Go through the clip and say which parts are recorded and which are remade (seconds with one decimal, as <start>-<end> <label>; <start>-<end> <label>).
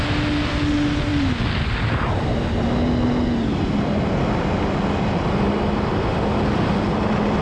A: 0.0-7.4 recorded